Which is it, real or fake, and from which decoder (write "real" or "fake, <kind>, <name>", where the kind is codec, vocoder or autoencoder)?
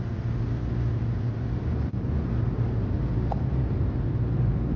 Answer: fake, vocoder, BigVGAN v2